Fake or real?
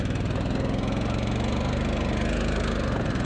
real